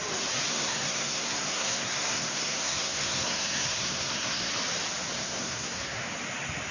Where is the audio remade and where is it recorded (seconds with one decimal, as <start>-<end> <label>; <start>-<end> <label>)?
0.0-0.5 recorded; 0.5-4.5 remade; 4.5-5.1 recorded; 5.1-6.0 remade; 6.0-6.7 recorded